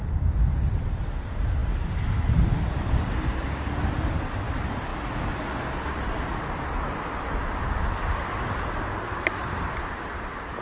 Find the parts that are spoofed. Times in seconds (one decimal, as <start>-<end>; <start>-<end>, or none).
0.0-1.6; 3.9-4.9; 5.6-6.3; 7.6-10.6